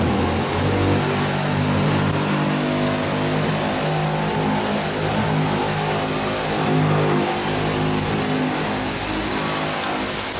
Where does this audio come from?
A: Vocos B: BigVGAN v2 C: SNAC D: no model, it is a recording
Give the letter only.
D